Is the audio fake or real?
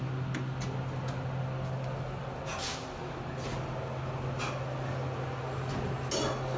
real